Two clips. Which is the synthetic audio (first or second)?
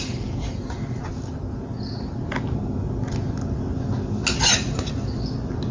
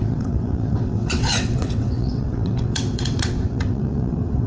second